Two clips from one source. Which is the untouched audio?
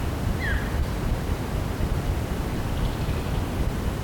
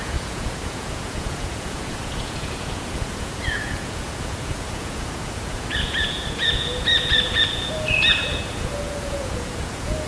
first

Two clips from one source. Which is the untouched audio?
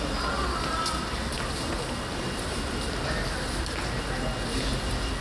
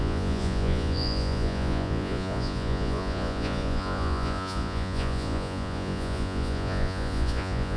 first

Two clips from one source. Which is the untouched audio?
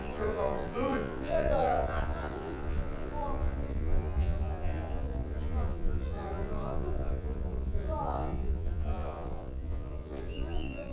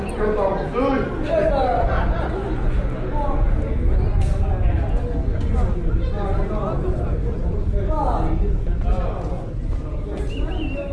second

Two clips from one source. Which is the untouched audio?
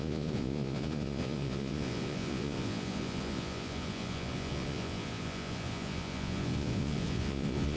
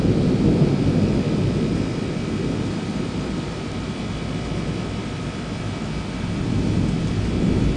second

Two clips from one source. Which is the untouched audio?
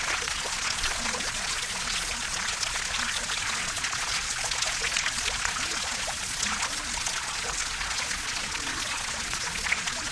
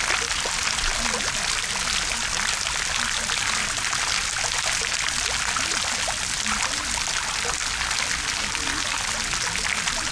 second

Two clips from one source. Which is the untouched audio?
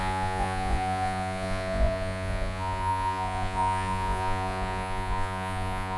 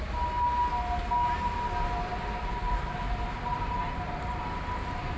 second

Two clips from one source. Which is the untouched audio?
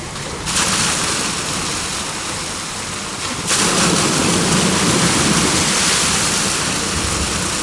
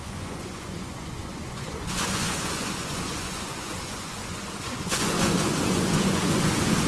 first